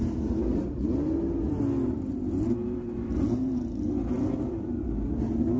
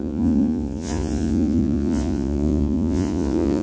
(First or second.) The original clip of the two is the first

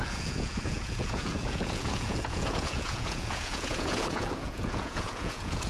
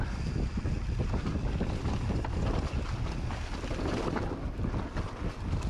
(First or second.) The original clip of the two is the second